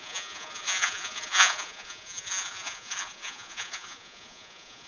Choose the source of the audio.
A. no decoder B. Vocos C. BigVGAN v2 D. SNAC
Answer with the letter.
B